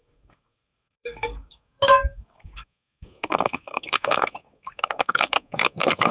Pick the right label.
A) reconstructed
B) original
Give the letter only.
A